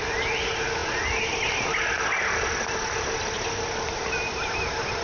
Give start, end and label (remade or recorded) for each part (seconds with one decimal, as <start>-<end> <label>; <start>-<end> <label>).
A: 0.0-5.0 recorded